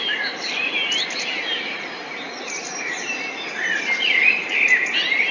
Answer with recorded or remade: recorded